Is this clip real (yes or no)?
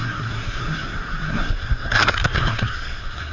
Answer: no